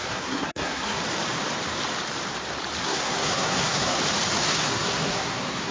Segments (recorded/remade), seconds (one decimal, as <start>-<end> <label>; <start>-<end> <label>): 0.0-1.0 remade; 1.0-2.8 recorded; 2.8-4.0 remade; 4.0-4.5 recorded; 4.5-5.7 remade